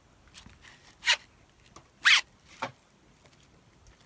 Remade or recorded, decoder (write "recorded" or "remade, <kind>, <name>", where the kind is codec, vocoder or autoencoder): recorded